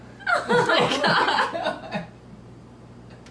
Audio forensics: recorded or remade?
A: recorded